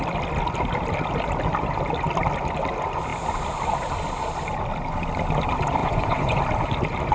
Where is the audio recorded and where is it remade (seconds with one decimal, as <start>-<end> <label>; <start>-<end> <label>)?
0.0-5.8 recorded; 5.8-6.4 remade; 6.4-7.1 recorded